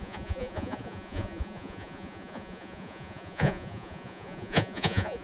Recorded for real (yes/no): no